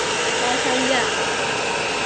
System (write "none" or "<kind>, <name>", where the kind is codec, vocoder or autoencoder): none